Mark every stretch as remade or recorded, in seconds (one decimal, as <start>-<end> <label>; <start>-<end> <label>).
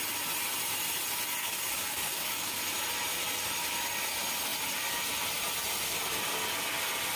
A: 0.0-1.4 recorded; 1.4-2.6 remade; 2.6-7.2 recorded